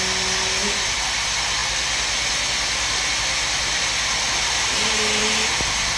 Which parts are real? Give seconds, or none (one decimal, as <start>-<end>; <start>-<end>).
0.0-6.0